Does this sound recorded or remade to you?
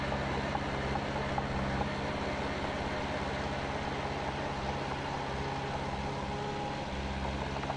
recorded